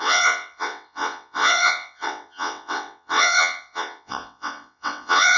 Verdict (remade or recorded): remade